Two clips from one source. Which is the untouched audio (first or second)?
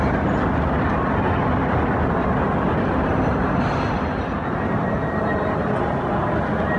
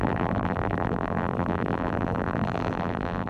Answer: first